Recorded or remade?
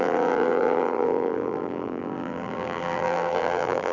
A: remade